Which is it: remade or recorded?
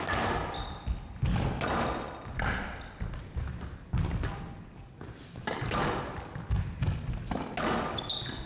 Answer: recorded